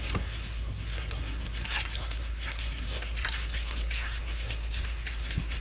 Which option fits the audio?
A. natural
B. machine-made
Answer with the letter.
B